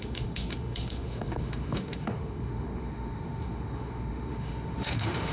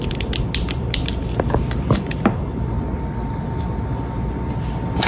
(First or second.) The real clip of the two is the second